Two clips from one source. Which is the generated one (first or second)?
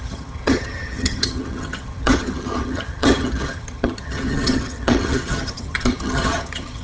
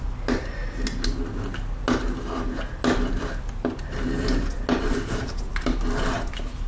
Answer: first